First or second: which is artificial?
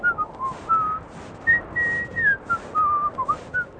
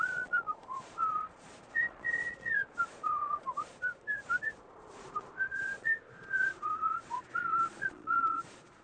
second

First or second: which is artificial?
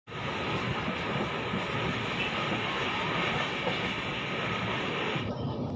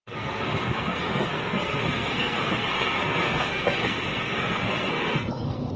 second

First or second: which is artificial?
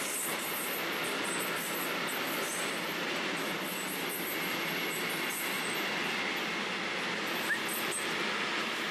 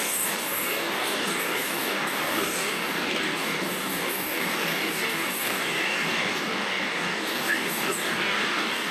second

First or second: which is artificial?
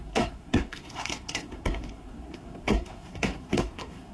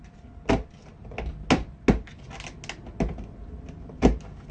first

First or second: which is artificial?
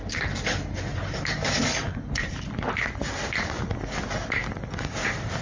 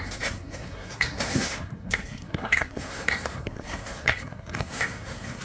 second